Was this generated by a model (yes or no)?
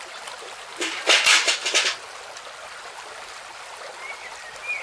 no